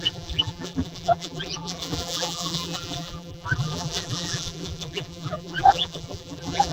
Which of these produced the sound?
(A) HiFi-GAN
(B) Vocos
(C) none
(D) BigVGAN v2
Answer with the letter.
D